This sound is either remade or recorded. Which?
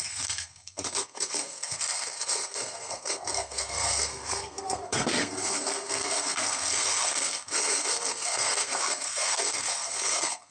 remade